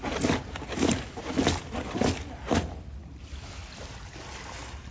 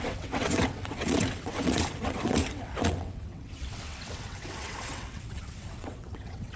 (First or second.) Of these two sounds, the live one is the first